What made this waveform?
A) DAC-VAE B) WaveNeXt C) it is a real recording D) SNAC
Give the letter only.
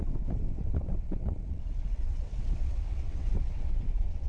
B